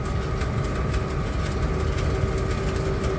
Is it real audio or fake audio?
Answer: real